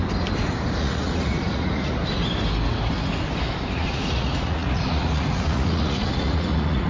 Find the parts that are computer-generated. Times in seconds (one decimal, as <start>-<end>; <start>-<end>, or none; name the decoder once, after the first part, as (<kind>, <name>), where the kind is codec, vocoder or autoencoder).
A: 0.8-2.0 (vocoder, Vocos); 3.7-6.9

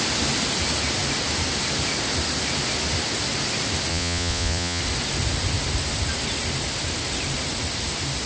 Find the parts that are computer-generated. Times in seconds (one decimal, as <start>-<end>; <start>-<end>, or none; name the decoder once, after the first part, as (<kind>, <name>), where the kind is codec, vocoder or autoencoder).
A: 3.9-4.8 (vocoder, Vocos)

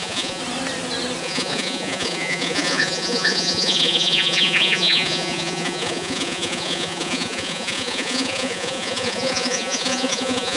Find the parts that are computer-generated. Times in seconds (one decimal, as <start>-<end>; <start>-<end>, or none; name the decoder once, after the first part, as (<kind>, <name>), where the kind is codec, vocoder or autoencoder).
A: 0.0-0.4 (vocoder, Vocos); 1.2-10.6

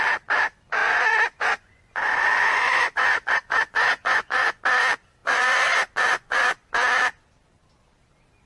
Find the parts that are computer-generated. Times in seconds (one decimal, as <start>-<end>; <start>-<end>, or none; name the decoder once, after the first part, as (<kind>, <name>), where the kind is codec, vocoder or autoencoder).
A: 0.8-4.6 (vocoder, Vocos); 5.2-6.5

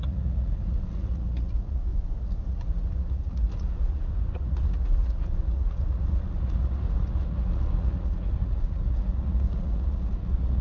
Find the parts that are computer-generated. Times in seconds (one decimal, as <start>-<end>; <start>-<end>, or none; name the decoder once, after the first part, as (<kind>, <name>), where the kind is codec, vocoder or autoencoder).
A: 0.0-1.9 (vocoder, Vocos); 2.5-10.6